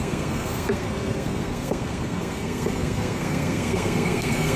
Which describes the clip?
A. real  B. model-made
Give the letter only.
B